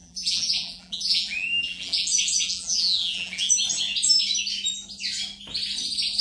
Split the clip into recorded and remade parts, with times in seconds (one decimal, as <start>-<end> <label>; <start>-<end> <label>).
0.0-3.5 remade; 3.5-6.2 recorded